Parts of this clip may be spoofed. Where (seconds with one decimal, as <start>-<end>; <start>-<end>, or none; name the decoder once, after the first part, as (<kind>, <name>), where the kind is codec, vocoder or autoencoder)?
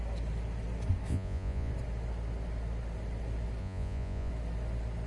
1.1-1.7 (vocoder, Vocos); 3.6-4.3